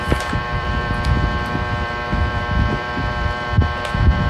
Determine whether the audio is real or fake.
fake